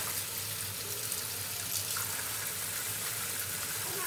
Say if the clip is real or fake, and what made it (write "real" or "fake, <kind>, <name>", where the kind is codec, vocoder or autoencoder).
real